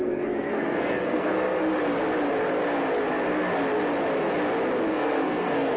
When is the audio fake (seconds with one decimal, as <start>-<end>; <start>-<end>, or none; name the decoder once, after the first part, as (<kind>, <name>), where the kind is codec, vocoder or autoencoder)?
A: 0.0-1.6 (codec, SNAC); 4.9-5.8